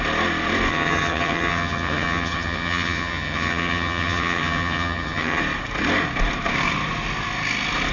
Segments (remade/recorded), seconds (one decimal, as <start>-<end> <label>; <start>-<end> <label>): 0.0-0.7 recorded; 0.7-5.4 remade; 5.4-7.9 recorded